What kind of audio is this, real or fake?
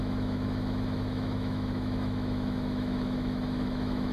fake